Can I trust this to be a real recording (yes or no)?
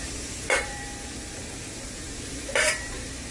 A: no